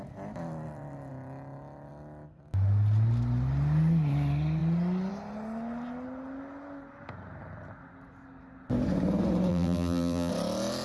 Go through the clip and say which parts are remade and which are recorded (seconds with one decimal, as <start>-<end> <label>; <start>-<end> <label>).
0.0-9.5 recorded; 9.5-10.3 remade; 10.3-10.8 recorded